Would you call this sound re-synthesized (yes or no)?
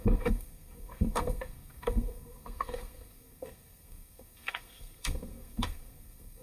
yes